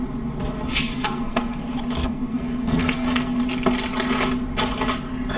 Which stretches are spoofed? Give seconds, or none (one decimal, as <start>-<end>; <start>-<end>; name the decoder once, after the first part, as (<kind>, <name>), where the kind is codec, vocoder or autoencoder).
0.7-1.6 (codec, SNAC); 2.0-3.4